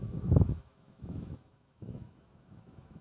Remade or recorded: remade